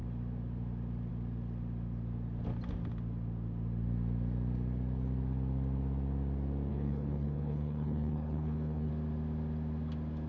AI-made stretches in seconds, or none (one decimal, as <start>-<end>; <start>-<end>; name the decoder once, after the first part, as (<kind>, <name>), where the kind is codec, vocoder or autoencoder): 6.7-8.9 (codec, HILCodec)